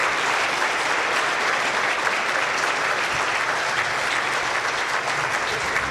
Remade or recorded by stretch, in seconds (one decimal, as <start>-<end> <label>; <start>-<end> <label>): 0.0-5.9 remade